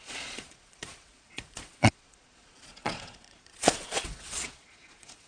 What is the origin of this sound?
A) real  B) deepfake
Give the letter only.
B